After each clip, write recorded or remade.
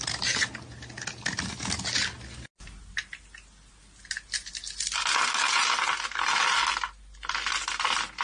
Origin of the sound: recorded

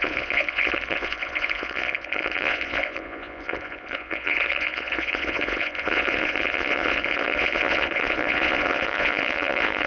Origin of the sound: remade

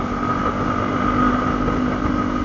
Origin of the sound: recorded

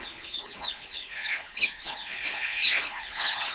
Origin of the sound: remade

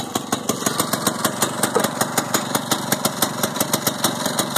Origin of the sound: recorded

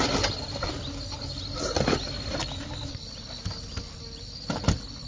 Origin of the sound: recorded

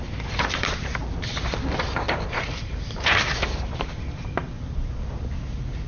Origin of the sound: remade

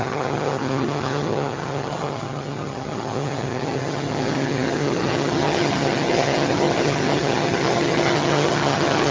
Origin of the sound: remade